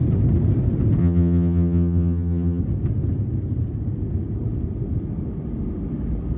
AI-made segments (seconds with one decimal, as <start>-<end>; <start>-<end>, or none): 1.0-2.6